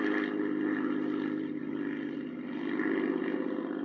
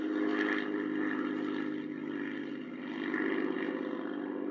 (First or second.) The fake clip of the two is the first